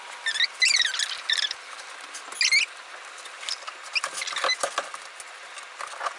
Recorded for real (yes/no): yes